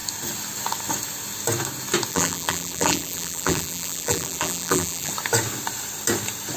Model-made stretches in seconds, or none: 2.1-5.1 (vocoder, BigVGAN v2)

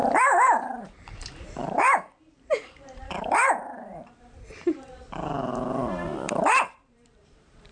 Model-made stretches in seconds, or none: 0.0-7.7 (vocoder, BigVGAN v2)

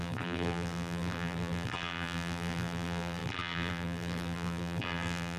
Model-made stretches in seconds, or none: 0.0-5.4 (vocoder, BigVGAN v2)

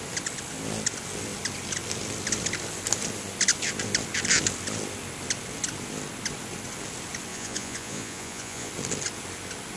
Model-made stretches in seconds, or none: 7.3-8.7 (vocoder, Vocos)

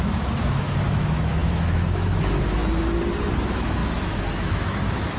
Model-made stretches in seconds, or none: 0.0-2.6 (autoencoder, DAC-VAE); 3.3-5.2